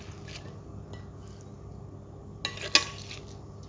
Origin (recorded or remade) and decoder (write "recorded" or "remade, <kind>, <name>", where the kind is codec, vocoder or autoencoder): recorded